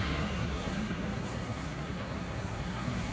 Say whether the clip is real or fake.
fake